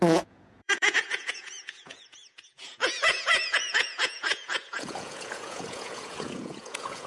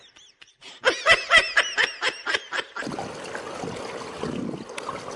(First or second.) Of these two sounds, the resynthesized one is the first